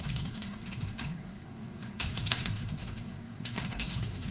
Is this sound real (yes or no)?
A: no